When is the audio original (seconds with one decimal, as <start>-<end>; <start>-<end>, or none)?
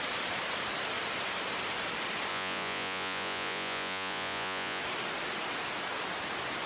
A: 0.0-2.3; 4.8-6.7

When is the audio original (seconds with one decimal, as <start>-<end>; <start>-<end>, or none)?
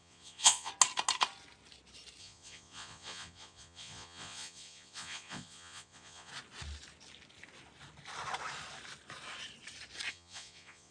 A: 0.7-2.2; 6.3-10.1